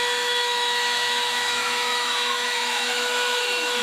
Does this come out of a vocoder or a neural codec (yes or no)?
yes